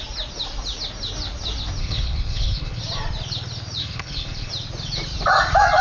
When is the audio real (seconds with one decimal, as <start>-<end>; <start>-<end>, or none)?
0.0-1.8; 2.8-3.8; 4.5-5.8